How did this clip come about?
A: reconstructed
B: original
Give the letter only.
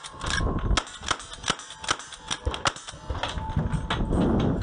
B